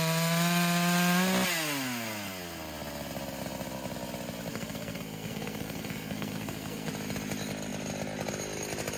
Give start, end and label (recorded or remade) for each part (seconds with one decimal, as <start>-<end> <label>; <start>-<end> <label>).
0.0-4.5 recorded; 4.5-6.9 remade; 6.9-9.0 recorded